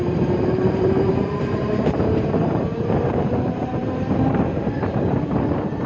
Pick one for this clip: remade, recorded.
remade